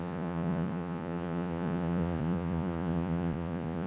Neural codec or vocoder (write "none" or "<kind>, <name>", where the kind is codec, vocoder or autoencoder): vocoder, Vocos